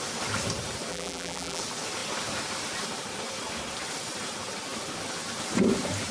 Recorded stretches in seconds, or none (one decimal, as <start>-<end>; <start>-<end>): 0.0-0.9; 1.6-6.1

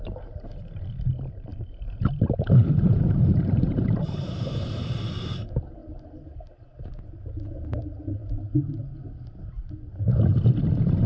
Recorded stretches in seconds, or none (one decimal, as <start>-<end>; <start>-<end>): 0.0-1.5; 5.0-11.1